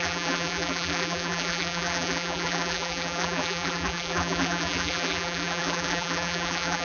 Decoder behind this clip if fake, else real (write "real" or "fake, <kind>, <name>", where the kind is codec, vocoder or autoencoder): fake, vocoder, BigVGAN v2